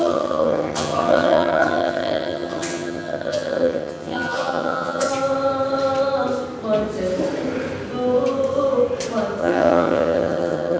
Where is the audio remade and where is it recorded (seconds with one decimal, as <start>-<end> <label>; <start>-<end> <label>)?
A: 0.0-5.1 remade; 5.1-9.4 recorded; 9.4-10.8 remade